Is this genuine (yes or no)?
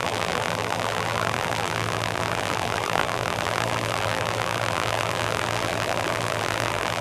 no